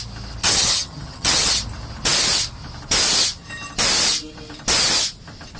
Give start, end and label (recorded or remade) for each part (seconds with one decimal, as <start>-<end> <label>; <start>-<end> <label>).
0.0-0.4 recorded; 0.4-1.5 remade; 1.5-5.6 recorded